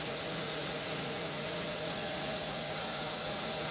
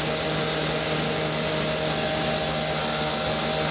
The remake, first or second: first